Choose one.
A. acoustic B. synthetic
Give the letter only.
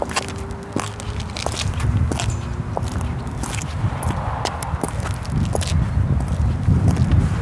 A